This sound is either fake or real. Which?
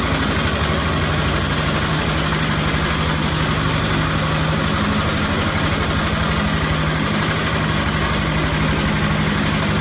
real